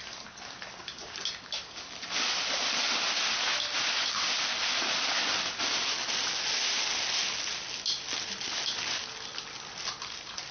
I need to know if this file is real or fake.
real